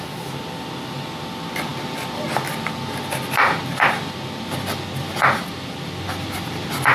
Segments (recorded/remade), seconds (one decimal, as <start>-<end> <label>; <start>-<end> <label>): 0.0-6.9 recorded